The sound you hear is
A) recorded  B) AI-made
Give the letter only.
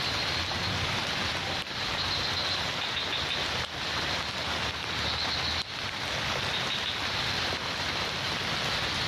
A